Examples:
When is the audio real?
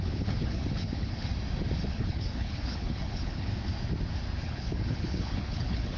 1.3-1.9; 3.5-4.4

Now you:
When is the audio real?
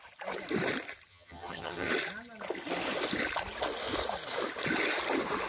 0.0-1.1; 1.9-5.5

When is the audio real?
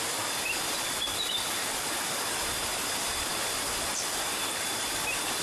0.0-5.4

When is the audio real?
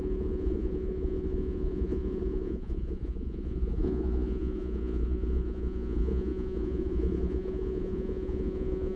none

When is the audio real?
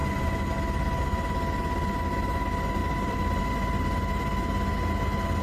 0.0-2.8; 3.4-5.4